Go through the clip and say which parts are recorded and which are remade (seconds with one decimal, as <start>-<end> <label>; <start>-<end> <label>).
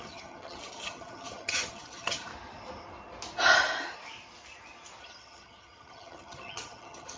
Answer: 0.0-2.3 remade; 2.3-5.0 recorded; 5.0-7.2 remade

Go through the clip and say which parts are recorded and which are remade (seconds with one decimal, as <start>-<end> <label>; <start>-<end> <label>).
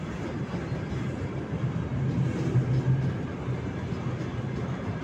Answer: 0.0-5.0 recorded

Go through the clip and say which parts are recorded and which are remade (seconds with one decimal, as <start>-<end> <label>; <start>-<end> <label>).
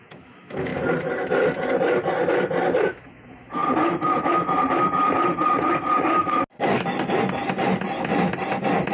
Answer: 0.0-0.7 remade; 0.7-2.9 recorded; 2.9-3.6 remade; 3.6-8.9 recorded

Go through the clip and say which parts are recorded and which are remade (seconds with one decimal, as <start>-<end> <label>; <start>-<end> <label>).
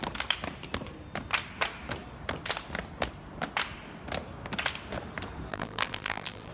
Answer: 0.0-5.5 recorded; 5.5-6.5 remade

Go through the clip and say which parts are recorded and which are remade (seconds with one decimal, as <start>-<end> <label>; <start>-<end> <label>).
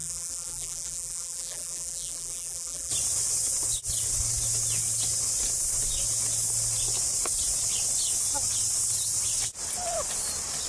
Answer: 0.0-2.9 remade; 2.9-10.7 recorded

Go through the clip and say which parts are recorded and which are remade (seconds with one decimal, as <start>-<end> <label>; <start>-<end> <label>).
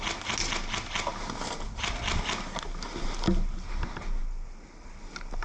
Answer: 0.0-5.4 recorded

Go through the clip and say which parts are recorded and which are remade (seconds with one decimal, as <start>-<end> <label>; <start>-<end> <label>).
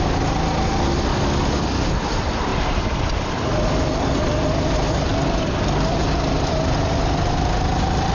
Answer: 0.0-1.1 recorded; 1.1-1.9 remade; 1.9-8.1 recorded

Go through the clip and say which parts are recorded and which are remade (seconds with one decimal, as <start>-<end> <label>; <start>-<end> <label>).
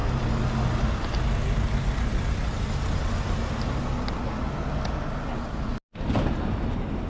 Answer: 0.0-7.1 recorded